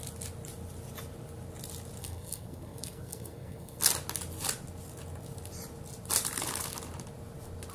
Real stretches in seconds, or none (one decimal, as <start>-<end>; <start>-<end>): 0.0-2.0; 3.8-7.7